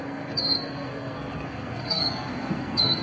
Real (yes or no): no